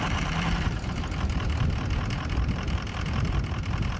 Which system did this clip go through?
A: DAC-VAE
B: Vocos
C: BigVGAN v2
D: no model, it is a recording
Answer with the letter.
C